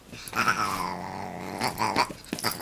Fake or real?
real